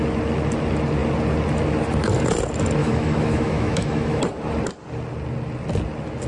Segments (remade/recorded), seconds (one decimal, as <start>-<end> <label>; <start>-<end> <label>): 0.0-2.8 recorded; 2.8-4.2 remade; 4.2-6.3 recorded